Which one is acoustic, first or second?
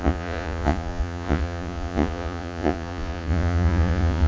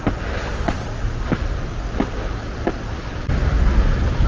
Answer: second